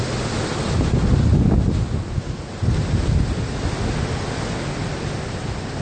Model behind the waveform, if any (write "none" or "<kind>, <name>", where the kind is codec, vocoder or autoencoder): none